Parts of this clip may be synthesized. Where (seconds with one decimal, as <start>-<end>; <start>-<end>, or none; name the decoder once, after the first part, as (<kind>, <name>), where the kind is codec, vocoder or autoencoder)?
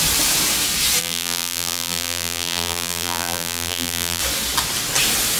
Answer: 1.0-4.2 (vocoder, BigVGAN v2)